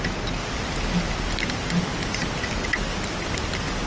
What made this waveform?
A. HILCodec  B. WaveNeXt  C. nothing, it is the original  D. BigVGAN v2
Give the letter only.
C